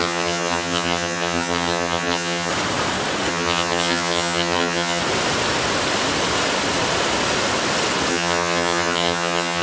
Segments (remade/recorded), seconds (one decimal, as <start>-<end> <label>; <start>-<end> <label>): 0.0-2.5 remade; 2.5-3.3 recorded; 3.3-5.0 remade; 5.0-8.1 recorded; 8.1-9.6 remade